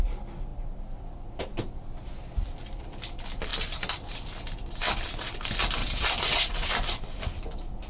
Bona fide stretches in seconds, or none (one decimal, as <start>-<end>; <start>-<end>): 0.0-5.8; 6.7-7.9